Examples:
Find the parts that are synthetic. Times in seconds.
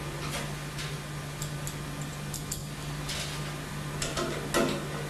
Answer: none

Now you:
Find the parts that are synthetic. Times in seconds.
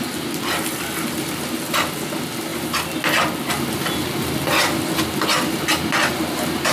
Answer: none